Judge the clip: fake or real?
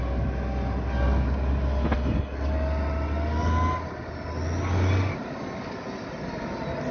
real